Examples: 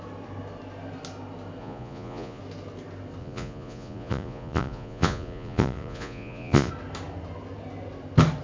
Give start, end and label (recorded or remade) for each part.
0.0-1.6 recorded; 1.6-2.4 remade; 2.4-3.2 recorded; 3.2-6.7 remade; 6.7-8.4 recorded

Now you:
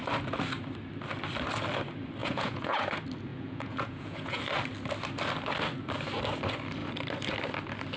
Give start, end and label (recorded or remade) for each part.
0.0-2.2 recorded; 2.2-2.8 remade; 2.8-3.3 recorded; 3.3-4.4 remade; 4.4-8.0 recorded

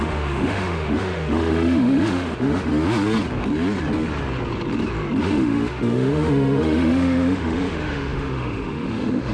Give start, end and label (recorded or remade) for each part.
0.0-2.7 remade; 2.7-5.2 recorded; 5.2-9.3 remade

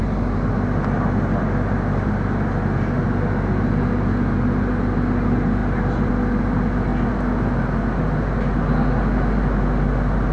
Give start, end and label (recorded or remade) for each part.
0.0-10.3 recorded

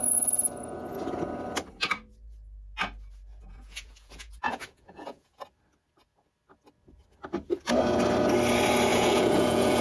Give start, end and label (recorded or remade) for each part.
0.0-3.3 recorded; 3.3-5.4 remade; 5.4-8.9 recorded; 8.9-9.8 remade

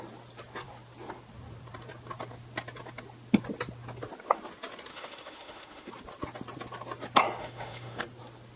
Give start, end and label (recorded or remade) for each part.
0.0-4.9 recorded; 4.9-5.9 remade; 5.9-7.4 recorded; 7.4-8.0 remade; 8.0-8.6 recorded

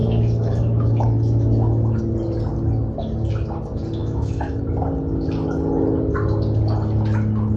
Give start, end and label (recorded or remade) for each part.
0.0-2.0 remade; 2.0-4.0 recorded; 4.0-4.6 remade; 4.6-7.6 recorded